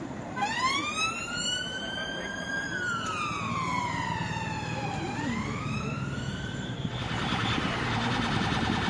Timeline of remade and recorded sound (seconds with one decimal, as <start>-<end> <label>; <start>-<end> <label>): 0.0-8.9 remade